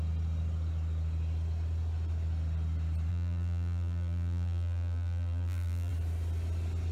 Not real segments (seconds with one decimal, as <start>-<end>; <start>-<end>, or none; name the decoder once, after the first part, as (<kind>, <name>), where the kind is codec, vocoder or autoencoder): 3.1-5.9 (vocoder, BigVGAN v2)